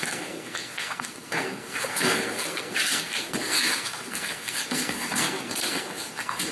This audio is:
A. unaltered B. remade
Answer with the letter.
B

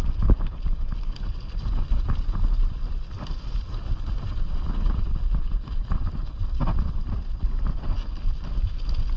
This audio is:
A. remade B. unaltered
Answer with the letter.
B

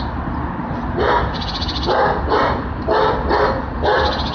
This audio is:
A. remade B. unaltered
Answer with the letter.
B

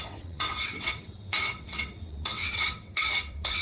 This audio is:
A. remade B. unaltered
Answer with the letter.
A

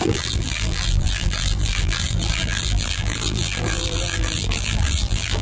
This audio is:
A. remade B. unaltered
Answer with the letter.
A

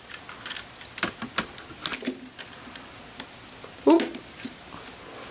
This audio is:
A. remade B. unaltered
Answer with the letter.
B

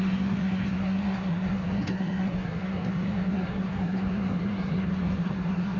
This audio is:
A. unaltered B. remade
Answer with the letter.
B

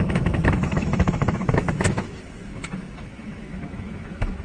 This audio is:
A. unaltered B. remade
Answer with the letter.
B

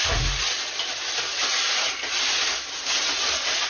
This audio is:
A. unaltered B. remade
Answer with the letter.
A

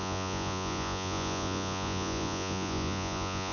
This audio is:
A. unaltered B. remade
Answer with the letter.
B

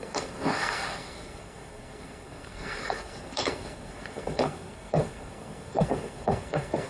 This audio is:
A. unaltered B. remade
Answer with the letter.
B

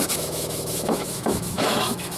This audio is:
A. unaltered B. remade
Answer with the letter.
B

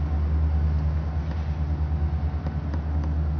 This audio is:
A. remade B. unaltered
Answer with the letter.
B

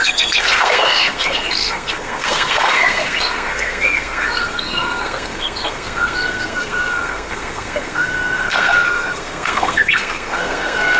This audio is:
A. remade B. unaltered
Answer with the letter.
A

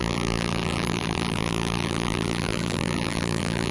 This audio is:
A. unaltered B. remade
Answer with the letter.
B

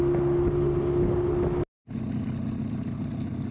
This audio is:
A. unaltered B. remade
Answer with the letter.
A